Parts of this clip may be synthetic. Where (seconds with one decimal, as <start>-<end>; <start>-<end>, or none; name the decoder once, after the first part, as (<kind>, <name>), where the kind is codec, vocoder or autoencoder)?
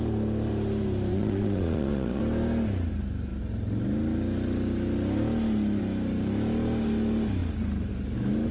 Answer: 1.1-2.2 (vocoder, Vocos)